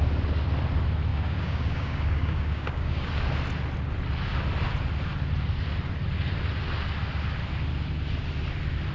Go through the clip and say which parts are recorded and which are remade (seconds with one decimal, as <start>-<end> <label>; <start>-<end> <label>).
0.0-1.1 recorded; 1.1-3.1 remade; 3.1-8.9 recorded